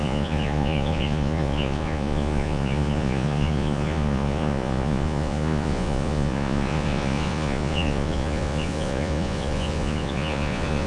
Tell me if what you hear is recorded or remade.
remade